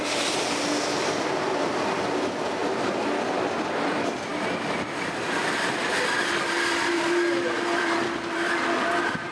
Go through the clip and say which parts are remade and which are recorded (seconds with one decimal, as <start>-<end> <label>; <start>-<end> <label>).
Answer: 0.0-2.6 remade; 2.6-3.8 recorded; 3.8-9.3 remade